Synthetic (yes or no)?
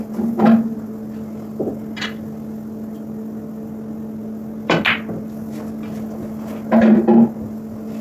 no